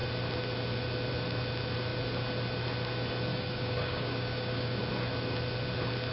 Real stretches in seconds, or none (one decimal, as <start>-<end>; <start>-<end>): 0.0-3.3; 4.8-6.1